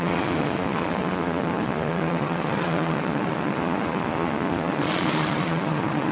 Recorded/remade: remade